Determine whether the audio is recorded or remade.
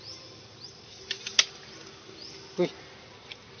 recorded